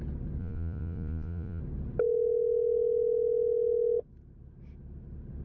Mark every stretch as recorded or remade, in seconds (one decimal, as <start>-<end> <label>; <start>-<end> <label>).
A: 0.0-0.4 recorded; 0.4-1.6 remade; 1.6-5.4 recorded